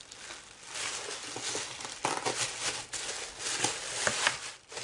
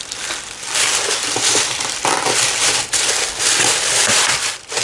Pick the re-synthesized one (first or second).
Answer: second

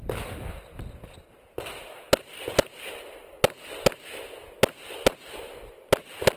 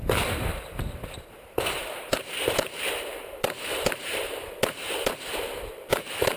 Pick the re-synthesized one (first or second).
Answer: second